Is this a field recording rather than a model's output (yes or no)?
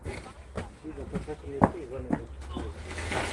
yes